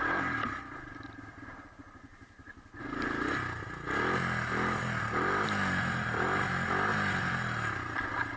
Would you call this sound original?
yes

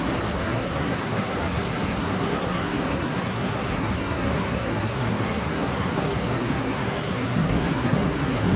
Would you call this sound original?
no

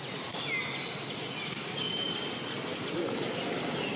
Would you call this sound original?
yes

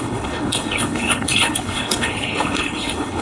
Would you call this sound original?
no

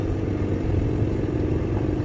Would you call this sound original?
yes